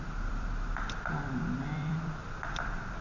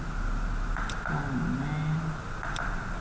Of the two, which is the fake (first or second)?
first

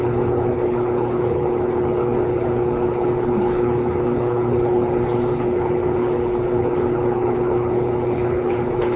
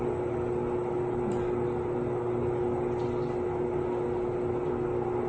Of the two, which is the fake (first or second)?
first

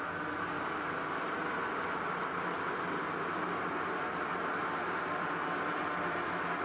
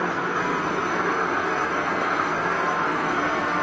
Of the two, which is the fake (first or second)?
second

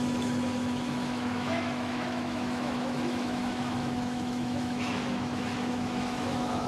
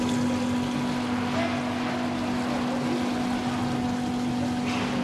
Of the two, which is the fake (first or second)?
first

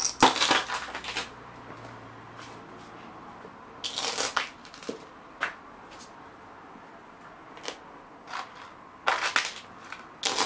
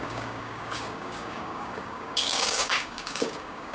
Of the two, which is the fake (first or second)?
second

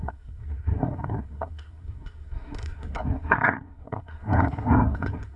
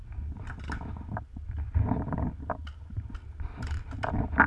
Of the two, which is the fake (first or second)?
first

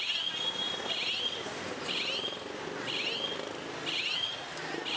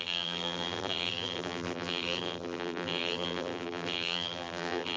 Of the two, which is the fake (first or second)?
second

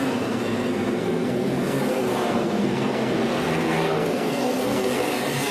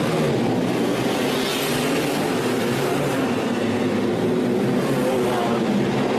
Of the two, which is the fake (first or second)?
first